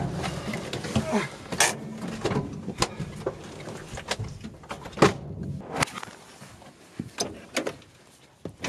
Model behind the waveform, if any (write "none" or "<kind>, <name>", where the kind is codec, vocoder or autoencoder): none